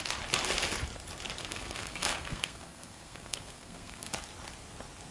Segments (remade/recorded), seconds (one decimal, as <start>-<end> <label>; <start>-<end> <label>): 0.0-1.4 recorded; 1.4-4.1 remade; 4.1-5.1 recorded

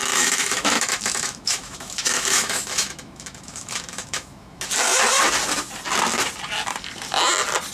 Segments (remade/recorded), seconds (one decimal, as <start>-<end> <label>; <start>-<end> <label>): 0.0-4.6 remade; 4.6-7.7 recorded